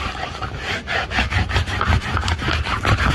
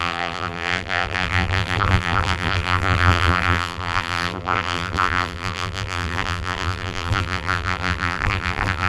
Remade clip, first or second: second